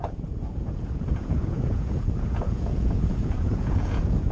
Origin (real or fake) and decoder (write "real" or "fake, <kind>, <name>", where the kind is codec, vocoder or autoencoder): fake, vocoder, Vocos